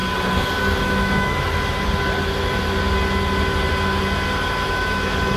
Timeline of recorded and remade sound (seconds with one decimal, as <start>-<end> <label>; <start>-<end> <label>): 0.0-0.8 recorded; 0.8-1.5 remade; 1.5-4.7 recorded; 4.7-5.4 remade